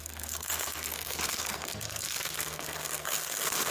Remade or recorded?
remade